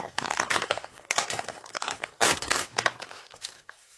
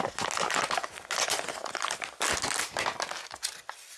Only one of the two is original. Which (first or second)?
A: second